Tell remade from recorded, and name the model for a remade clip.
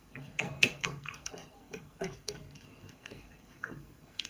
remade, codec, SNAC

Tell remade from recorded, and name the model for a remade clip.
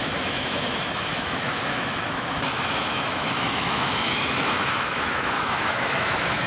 remade, autoencoder, DAC-VAE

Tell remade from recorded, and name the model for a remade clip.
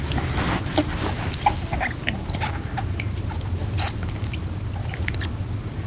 remade, vocoder, BigVGAN v2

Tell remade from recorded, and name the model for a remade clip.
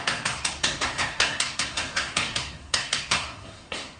remade, codec, SNAC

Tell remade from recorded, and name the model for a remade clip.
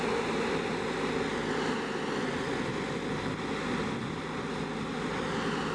recorded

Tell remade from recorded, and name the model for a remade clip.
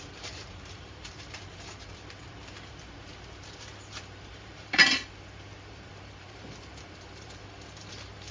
remade, vocoder, BigVGAN v2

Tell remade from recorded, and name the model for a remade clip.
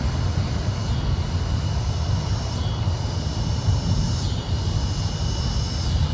recorded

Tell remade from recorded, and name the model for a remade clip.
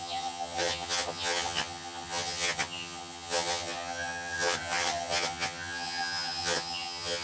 remade, vocoder, HiFi-GAN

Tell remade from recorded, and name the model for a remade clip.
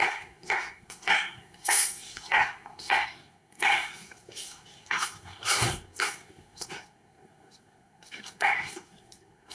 remade, codec, SNAC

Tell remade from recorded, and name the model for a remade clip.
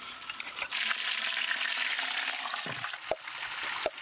recorded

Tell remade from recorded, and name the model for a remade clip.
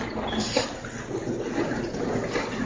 recorded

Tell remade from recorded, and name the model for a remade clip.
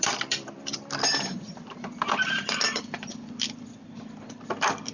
remade, vocoder, BigVGAN v2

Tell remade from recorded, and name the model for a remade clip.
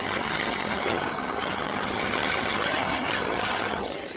remade, vocoder, HiFi-GAN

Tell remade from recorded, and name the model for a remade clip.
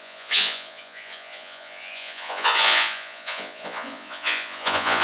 remade, vocoder, Vocos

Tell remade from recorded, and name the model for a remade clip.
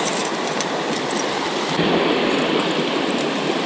recorded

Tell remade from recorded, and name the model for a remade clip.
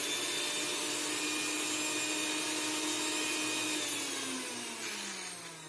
recorded